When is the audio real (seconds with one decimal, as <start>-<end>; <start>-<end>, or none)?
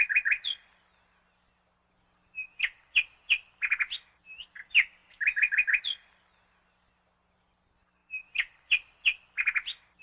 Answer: 0.0-10.0